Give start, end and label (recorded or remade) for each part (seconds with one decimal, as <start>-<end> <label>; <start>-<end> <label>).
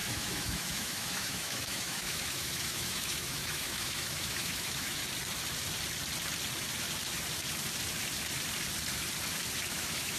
0.0-5.0 remade; 5.0-9.7 recorded; 9.7-10.2 remade